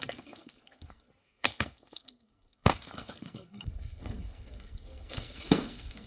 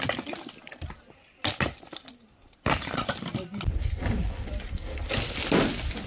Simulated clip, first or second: first